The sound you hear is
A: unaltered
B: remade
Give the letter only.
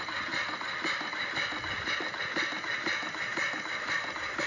A